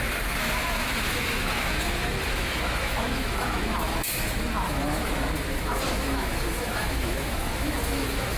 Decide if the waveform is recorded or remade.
remade